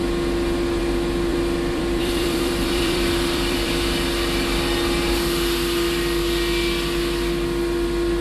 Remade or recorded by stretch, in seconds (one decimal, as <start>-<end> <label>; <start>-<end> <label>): 0.0-1.3 recorded; 1.3-3.7 remade; 3.7-8.2 recorded